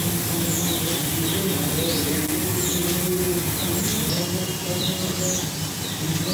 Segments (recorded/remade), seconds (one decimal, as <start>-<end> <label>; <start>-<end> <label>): 0.0-1.0 recorded; 1.0-1.7 remade; 1.7-3.9 recorded; 3.9-5.1 remade; 5.1-6.3 recorded